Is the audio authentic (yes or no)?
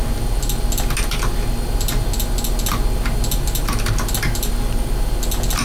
yes